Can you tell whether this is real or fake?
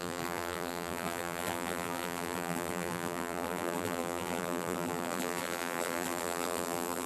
fake